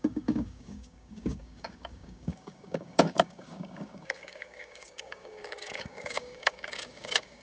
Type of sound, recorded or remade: remade